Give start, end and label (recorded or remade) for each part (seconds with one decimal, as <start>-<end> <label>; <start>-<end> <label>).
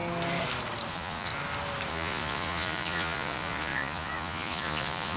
0.0-0.9 recorded; 0.9-1.3 remade; 1.3-1.9 recorded; 1.9-5.2 remade